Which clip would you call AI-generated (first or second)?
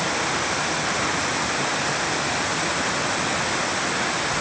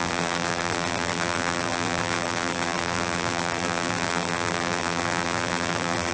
second